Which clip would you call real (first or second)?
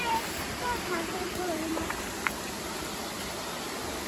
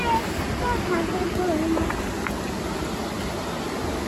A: second